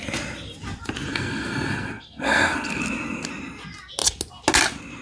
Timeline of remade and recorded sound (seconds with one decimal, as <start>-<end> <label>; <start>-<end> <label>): 0.0-1.1 recorded; 1.1-2.8 remade; 2.8-5.0 recorded